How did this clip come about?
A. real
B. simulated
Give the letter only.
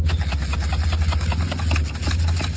A